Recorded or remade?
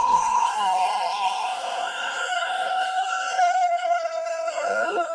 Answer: remade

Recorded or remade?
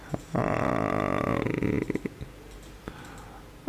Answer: recorded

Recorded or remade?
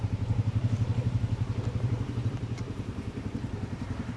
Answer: remade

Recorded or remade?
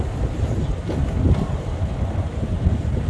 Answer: recorded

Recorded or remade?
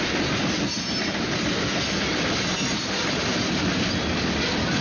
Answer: recorded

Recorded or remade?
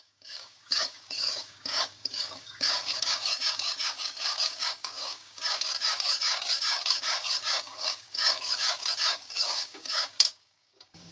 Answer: remade